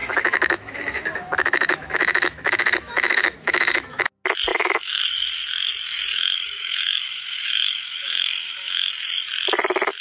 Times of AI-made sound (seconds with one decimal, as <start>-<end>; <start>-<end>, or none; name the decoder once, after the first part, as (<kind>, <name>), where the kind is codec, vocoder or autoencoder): 0.0-4.1 (autoencoder, DAC-VAE); 4.5-5.0; 6.1-8.9

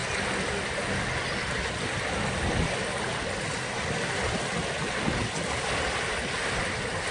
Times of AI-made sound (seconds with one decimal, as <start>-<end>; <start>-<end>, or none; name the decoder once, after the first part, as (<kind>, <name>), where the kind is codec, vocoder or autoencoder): none